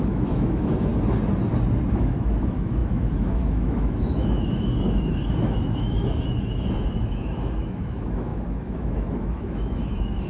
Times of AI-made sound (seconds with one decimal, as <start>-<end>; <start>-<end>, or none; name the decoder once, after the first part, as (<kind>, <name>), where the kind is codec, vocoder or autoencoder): 0.0-0.9 (autoencoder, DAC-VAE); 1.9-10.3